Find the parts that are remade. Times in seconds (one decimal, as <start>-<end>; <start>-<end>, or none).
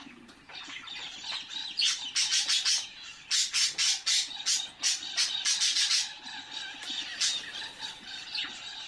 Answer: none